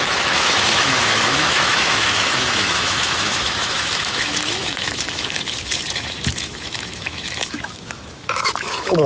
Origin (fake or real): fake